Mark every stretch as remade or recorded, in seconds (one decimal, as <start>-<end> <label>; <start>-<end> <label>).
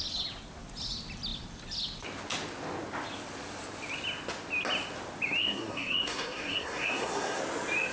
0.0-5.4 recorded; 5.4-7.4 remade; 7.4-7.9 recorded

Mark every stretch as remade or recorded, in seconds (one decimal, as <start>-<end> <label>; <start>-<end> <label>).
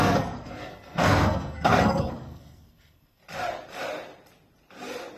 0.0-3.2 remade; 3.2-5.2 recorded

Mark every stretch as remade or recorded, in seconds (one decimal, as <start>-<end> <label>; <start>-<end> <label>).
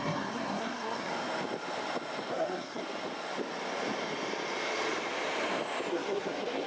0.0-1.1 remade; 1.1-2.3 recorded; 2.3-2.8 remade; 2.8-5.9 recorded; 5.9-6.7 remade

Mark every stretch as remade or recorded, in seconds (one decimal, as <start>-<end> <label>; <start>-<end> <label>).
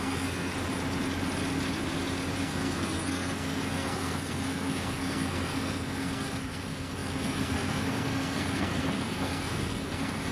0.0-0.5 remade; 0.5-2.4 recorded; 2.4-10.3 remade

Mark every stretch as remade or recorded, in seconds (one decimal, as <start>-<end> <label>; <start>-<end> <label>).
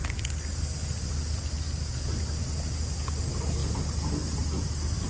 0.0-5.1 recorded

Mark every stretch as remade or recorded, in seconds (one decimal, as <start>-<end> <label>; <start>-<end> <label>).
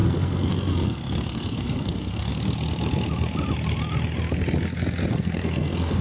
0.0-2.3 remade; 2.3-5.1 recorded; 5.1-6.0 remade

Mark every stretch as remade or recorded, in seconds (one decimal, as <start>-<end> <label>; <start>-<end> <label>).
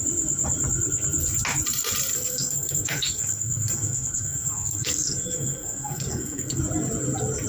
0.0-2.1 recorded; 2.1-6.6 remade; 6.6-7.5 recorded